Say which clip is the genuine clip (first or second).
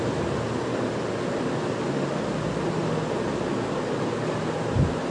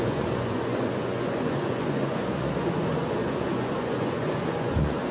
first